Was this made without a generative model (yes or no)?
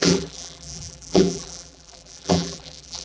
no